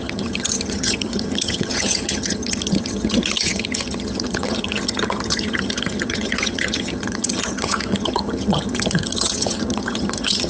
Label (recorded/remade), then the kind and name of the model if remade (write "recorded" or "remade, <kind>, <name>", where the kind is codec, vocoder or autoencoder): remade, vocoder, HiFi-GAN